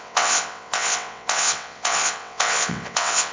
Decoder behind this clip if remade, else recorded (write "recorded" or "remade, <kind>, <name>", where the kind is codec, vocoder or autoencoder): remade, vocoder, WaveNeXt